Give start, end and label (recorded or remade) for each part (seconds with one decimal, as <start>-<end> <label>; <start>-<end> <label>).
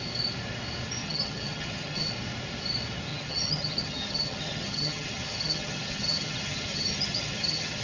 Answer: 0.0-1.0 recorded; 1.0-2.1 remade; 2.1-3.1 recorded; 3.1-7.8 remade